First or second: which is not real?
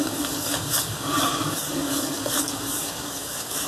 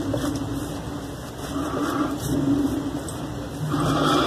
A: first